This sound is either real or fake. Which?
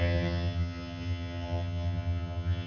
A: fake